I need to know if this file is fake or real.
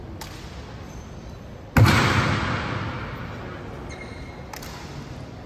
real